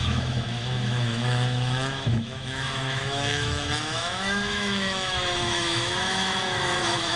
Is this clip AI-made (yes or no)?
yes